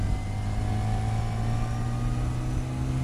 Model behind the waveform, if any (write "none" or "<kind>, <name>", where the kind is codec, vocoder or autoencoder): none